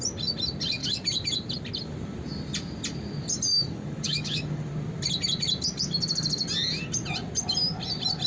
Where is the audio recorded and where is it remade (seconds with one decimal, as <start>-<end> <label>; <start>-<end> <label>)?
0.0-3.5 recorded; 3.5-4.7 remade; 4.7-8.3 recorded